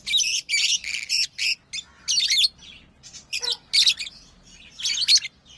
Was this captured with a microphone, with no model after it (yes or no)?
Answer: yes